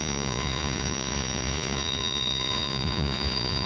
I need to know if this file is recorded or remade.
remade